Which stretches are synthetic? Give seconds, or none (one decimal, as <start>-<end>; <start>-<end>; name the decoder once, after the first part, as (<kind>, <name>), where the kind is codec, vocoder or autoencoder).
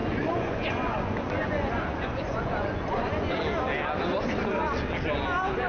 0.0-3.4 (vocoder, Vocos)